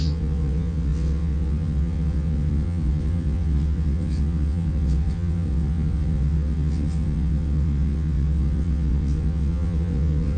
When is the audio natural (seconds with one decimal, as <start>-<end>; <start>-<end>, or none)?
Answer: none